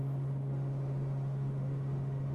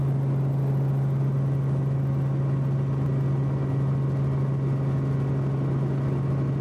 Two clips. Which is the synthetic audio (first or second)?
first